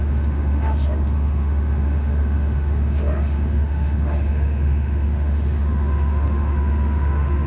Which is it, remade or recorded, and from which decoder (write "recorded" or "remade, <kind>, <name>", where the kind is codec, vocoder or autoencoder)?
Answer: remade, autoencoder, DAC-VAE